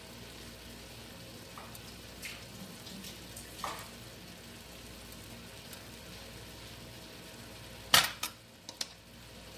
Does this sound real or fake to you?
real